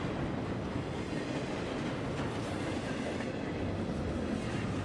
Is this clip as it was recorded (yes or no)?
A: yes